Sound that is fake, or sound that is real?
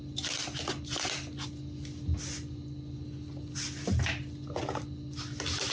real